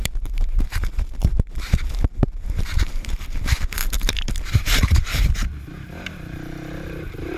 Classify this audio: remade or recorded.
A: remade